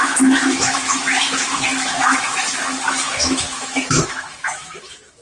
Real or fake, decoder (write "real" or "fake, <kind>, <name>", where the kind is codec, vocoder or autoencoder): fake, autoencoder, DAC-VAE